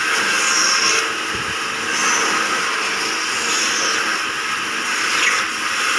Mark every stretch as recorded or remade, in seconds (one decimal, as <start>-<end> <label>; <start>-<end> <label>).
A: 0.0-6.0 recorded

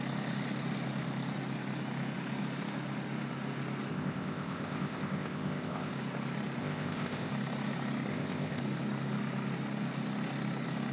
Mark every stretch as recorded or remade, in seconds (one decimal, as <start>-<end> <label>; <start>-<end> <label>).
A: 0.0-3.9 recorded; 3.9-5.9 remade; 5.9-6.6 recorded; 6.6-7.3 remade; 7.3-8.1 recorded; 8.1-8.6 remade; 8.6-10.9 recorded